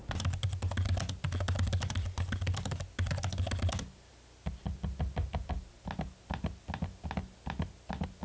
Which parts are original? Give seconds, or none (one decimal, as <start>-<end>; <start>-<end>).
0.0-8.2